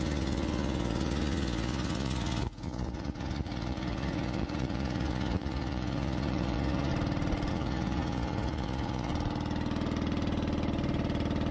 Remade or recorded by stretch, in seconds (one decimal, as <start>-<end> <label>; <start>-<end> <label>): 0.0-6.9 remade; 6.9-7.5 recorded; 7.5-9.1 remade; 9.1-11.5 recorded

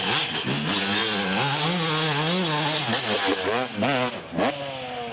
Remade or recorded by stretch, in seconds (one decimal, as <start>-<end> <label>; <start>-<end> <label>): 0.0-5.1 recorded

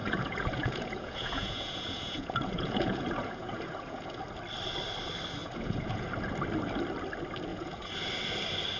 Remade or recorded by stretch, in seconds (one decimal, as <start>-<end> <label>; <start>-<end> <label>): 0.0-4.2 remade; 4.2-5.4 recorded; 5.4-6.1 remade; 6.1-7.5 recorded; 7.5-8.1 remade; 8.1-8.8 recorded

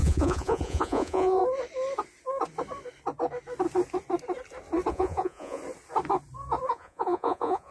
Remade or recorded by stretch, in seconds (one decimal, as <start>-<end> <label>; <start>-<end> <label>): 0.0-1.4 remade; 1.4-4.9 recorded; 4.9-5.6 remade; 5.6-6.7 recorded; 6.7-7.7 remade

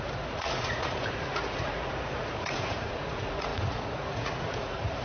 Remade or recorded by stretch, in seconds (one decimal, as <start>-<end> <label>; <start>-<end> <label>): 0.0-5.0 remade

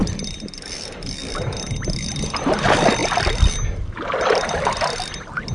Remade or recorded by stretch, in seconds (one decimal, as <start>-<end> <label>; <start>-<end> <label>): 0.0-5.5 recorded

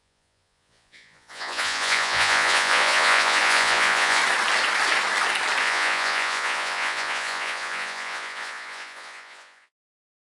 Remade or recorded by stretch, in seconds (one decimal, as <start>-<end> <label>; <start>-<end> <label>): 0.0-4.2 remade; 4.2-5.6 recorded; 5.6-10.3 remade